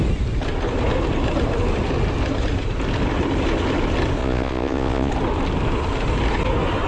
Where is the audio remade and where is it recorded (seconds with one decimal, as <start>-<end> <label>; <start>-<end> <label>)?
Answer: 0.0-4.2 recorded; 4.2-5.1 remade; 5.1-6.9 recorded